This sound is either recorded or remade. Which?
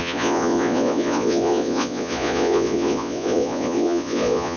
remade